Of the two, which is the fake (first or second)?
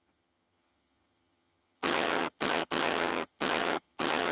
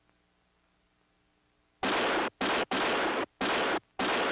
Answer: first